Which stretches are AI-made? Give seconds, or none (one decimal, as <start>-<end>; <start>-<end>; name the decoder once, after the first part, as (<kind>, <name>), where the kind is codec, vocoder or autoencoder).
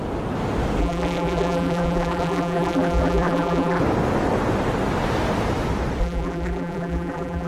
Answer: 0.8-3.8 (vocoder, BigVGAN v2); 6.0-7.5